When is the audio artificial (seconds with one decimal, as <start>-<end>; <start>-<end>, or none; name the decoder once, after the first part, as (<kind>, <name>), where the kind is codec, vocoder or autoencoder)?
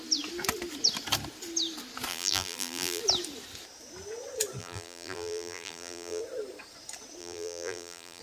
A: 2.1-3.0 (vocoder, BigVGAN v2); 4.6-6.2; 7.2-8.2